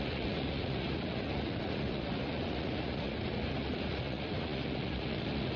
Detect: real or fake fake